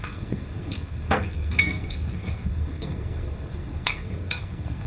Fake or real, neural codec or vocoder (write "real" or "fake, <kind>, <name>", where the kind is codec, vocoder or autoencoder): fake, codec, SNAC